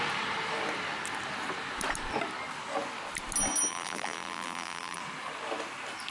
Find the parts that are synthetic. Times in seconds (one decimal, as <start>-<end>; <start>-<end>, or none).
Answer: 3.7-5.0